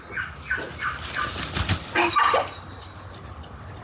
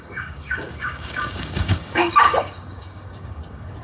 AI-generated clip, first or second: second